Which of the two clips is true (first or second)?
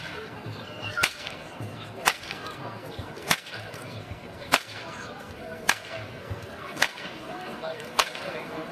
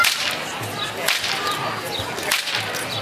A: second